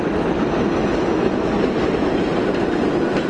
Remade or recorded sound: recorded